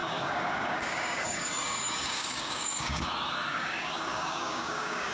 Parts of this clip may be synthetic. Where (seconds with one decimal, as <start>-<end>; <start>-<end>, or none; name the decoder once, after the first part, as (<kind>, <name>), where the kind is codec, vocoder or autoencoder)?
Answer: 0.0-3.1 (codec, DAC); 3.5-5.1